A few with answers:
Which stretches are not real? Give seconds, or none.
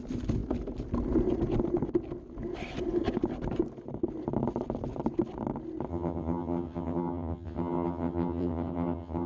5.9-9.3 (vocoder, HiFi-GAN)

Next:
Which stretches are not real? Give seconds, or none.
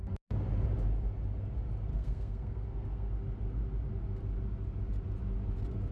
1.9-3.1 (codec, SNAC)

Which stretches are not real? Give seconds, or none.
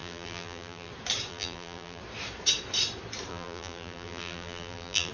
0.0-0.9 (vocoder, BigVGAN v2); 1.3-2.0; 3.3-5.1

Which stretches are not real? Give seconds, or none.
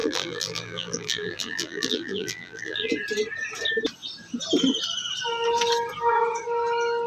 0.0-2.9 (vocoder, BigVGAN v2)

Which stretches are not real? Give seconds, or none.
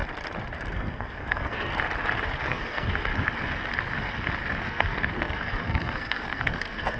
0.7-1.7 (codec, SNAC); 2.5-3.1; 4.7-7.0